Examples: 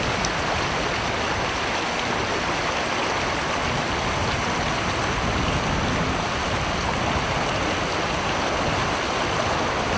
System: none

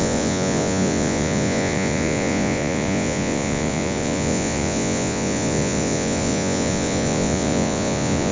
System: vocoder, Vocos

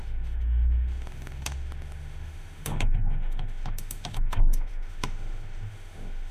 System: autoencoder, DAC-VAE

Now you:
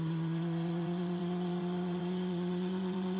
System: vocoder, Vocos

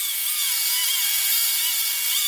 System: none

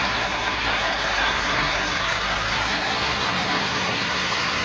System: codec, SNAC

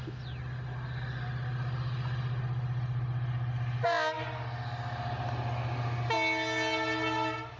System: none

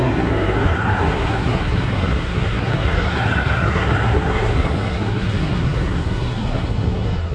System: codec, SNAC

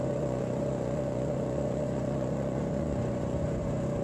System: vocoder, Vocos